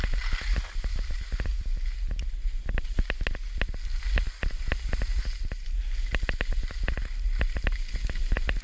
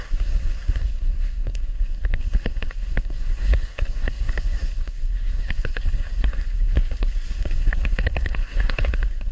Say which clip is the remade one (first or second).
second